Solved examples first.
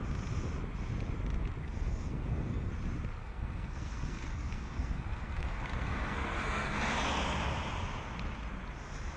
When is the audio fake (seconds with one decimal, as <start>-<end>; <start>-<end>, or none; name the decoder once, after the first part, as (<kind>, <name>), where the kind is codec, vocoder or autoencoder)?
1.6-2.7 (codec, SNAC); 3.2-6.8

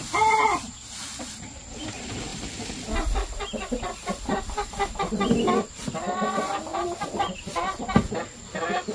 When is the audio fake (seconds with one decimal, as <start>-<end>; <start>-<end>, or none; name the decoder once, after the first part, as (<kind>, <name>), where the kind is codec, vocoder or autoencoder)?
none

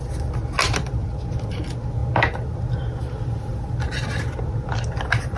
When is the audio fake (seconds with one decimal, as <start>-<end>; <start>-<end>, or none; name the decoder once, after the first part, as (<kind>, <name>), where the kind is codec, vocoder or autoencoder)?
none

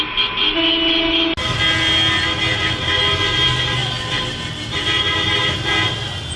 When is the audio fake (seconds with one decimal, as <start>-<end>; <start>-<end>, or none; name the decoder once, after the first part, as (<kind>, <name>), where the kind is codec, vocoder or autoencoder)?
none